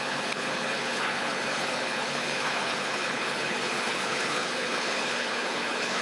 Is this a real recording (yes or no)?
no